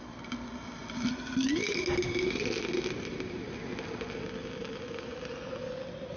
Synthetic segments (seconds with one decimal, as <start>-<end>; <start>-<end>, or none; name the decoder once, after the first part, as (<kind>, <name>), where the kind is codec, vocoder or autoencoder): none